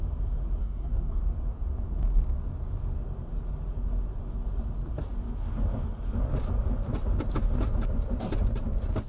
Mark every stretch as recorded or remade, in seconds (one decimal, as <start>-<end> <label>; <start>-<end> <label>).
0.0-0.6 recorded; 0.6-1.2 remade; 1.2-9.1 recorded